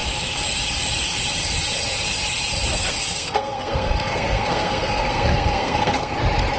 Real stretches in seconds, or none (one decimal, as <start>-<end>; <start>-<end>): 0.0-2.7; 6.1-6.6